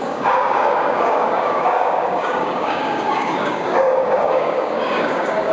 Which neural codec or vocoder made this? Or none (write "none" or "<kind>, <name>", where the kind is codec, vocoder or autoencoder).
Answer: codec, DAC